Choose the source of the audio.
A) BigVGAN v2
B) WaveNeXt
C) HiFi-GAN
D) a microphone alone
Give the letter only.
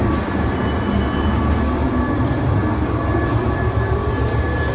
D